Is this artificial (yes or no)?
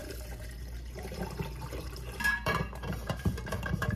yes